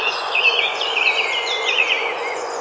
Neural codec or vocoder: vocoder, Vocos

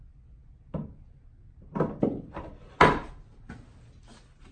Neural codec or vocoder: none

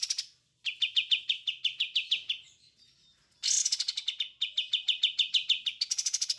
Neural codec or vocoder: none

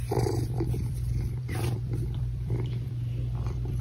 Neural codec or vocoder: vocoder, BigVGAN v2